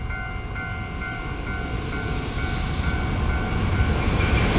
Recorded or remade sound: recorded